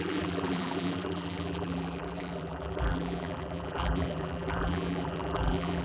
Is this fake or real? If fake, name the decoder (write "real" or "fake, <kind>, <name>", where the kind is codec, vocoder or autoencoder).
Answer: fake, vocoder, BigVGAN v2